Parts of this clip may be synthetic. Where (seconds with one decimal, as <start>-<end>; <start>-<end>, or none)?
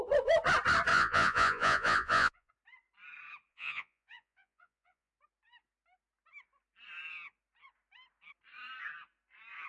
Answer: 0.9-2.5; 3.5-5.1